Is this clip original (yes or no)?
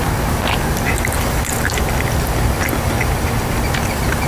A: yes